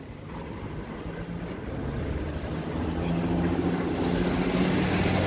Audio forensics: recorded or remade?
recorded